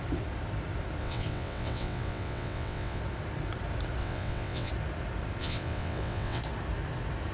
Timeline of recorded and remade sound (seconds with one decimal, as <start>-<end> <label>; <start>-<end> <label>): 0.0-1.0 recorded; 1.0-3.0 remade; 3.0-4.0 recorded; 4.0-4.7 remade; 4.7-5.4 recorded; 5.4-6.4 remade; 6.4-7.3 recorded